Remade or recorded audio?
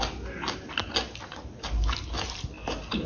recorded